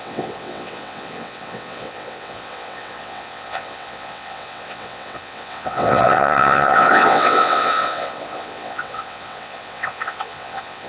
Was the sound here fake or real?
fake